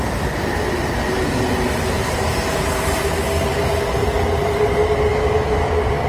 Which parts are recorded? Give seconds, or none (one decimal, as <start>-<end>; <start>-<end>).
0.0-5.1; 5.6-6.1